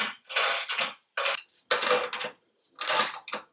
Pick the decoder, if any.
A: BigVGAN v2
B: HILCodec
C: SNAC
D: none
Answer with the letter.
D